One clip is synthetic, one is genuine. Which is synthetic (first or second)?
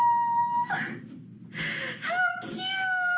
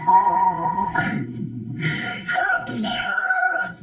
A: second